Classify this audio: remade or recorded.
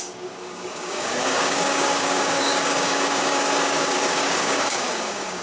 remade